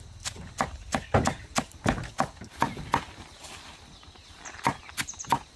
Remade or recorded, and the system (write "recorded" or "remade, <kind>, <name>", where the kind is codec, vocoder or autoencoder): recorded